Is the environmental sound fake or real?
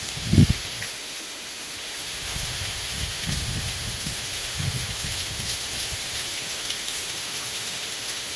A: fake